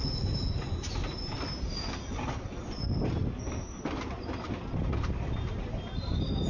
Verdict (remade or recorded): recorded